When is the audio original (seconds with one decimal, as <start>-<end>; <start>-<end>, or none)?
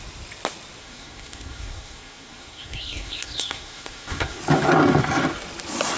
0.0-0.8; 4.4-6.0